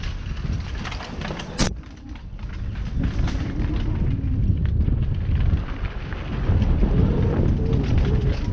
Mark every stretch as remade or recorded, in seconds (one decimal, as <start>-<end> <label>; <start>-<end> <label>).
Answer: 0.0-8.5 recorded